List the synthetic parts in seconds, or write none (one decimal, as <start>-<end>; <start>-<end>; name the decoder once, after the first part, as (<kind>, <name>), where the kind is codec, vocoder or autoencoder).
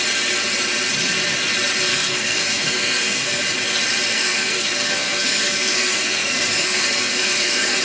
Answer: 1.9-3.4 (codec, SNAC); 4.1-7.8